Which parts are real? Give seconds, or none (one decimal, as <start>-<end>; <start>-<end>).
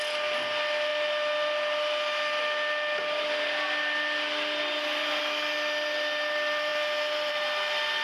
0.0-8.0